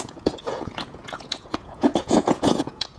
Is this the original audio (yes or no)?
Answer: no